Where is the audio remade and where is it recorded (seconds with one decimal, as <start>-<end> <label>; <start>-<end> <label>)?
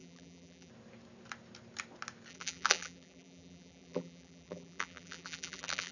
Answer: 0.0-0.7 remade; 0.7-2.3 recorded; 2.3-5.9 remade